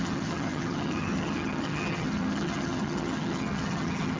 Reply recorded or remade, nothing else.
remade